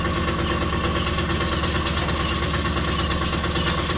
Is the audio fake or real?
real